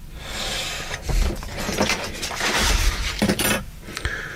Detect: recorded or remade remade